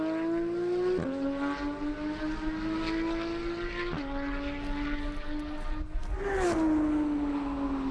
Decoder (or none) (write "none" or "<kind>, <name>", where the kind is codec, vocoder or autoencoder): none